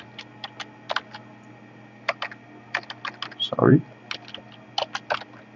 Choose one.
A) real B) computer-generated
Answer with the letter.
A